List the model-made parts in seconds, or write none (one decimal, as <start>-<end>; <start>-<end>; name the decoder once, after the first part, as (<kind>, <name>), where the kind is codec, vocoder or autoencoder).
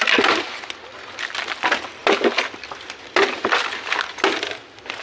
none